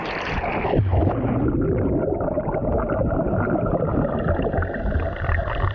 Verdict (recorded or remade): recorded